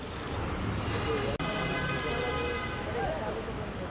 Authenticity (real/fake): real